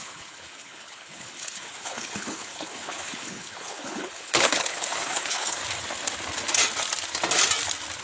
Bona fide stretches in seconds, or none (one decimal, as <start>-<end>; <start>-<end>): 5.6-8.0